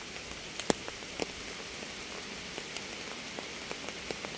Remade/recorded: recorded